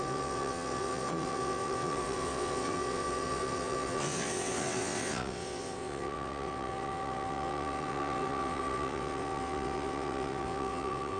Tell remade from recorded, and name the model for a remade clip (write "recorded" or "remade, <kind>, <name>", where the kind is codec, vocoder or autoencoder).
remade, vocoder, WaveNeXt